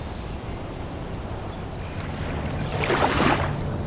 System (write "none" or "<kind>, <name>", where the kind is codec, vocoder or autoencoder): none